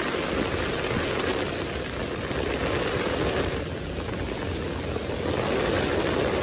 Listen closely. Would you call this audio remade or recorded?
recorded